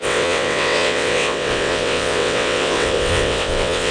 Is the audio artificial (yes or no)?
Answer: yes